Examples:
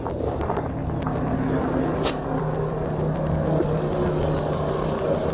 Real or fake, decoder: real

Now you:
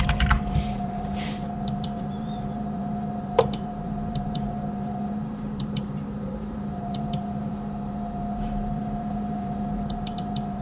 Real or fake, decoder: fake, vocoder, BigVGAN v2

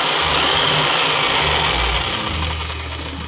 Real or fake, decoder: real